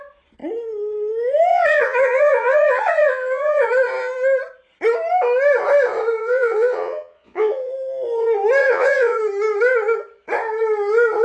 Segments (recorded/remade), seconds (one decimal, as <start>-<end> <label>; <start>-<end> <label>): 0.0-1.5 recorded; 1.5-3.7 remade; 3.7-6.2 recorded; 6.2-7.7 remade; 7.7-8.6 recorded; 8.6-9.2 remade; 9.2-11.2 recorded